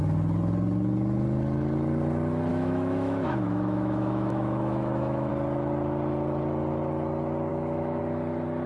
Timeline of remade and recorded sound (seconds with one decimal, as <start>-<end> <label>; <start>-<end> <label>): 0.0-2.5 recorded; 2.5-5.3 remade; 5.3-7.5 recorded; 7.5-8.0 remade; 8.0-8.7 recorded